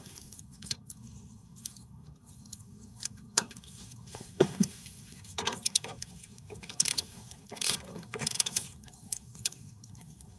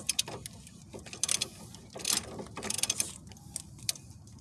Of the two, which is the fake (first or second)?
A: first